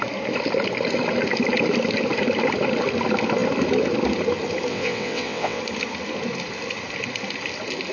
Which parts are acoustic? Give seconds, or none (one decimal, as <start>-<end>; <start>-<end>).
0.0-4.7; 5.6-7.9